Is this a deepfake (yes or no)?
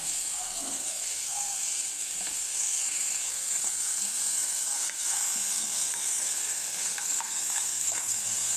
yes